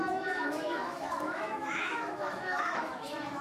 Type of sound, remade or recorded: remade